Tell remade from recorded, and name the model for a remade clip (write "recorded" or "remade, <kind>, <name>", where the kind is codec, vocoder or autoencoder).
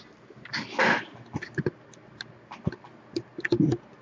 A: recorded